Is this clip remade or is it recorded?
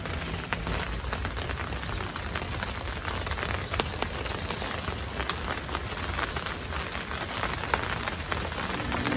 recorded